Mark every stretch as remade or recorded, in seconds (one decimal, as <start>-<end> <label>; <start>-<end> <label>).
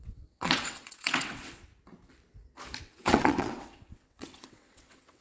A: 0.0-1.7 remade; 1.7-2.8 recorded; 2.8-5.2 remade